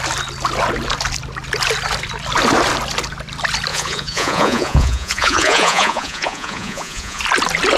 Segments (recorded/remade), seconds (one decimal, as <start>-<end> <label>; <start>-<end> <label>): 0.0-3.7 recorded; 3.7-7.2 remade; 7.2-7.8 recorded